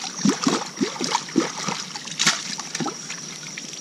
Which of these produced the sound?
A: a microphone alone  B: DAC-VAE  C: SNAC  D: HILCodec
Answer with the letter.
A